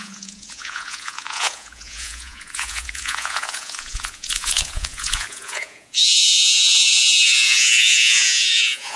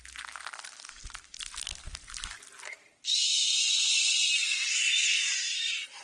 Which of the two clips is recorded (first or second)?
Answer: second